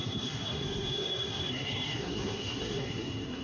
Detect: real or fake fake